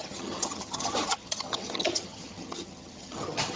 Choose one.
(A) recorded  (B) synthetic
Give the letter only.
B